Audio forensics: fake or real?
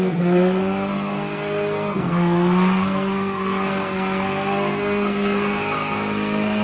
fake